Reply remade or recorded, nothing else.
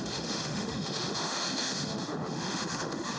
remade